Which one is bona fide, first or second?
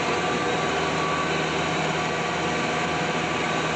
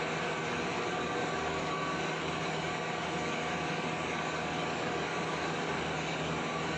first